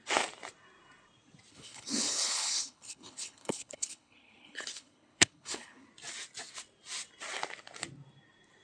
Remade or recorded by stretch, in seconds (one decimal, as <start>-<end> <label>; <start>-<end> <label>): 0.0-1.5 recorded; 1.5-5.9 remade; 5.9-8.6 recorded